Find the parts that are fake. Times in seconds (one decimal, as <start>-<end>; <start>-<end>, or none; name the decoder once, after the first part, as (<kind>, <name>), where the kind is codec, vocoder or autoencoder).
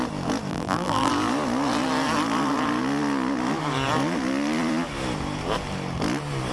0.5-1.1 (vocoder, BigVGAN v2)